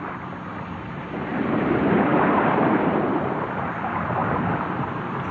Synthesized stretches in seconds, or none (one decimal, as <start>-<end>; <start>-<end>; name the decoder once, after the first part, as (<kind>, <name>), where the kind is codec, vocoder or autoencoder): 4.2-4.8 (vocoder, BigVGAN v2)